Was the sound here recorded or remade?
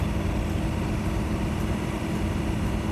recorded